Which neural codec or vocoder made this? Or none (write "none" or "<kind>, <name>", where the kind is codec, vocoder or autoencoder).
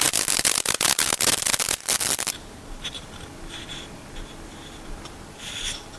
none